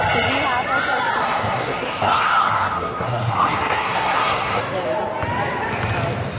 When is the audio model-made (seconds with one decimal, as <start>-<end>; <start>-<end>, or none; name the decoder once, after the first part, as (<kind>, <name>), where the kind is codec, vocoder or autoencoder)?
1.2-4.6 (codec, SNAC)